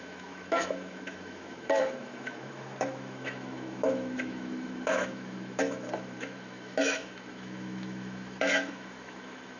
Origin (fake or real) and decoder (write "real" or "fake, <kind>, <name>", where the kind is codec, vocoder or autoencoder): fake, autoencoder, DAC-VAE